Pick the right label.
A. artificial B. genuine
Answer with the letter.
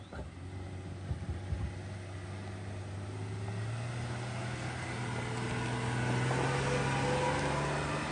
B